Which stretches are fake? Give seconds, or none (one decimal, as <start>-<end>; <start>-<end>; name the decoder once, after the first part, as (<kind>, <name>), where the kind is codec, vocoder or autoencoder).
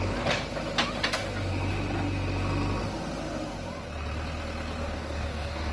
4.8-5.7 (codec, DAC)